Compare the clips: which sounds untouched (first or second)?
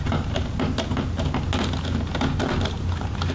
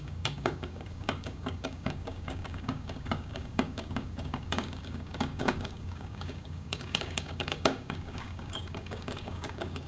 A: first